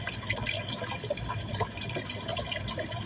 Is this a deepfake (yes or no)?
no